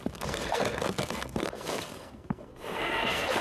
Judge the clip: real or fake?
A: fake